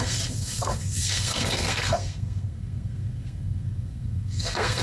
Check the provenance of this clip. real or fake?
fake